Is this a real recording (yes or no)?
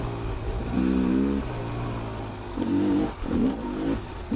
yes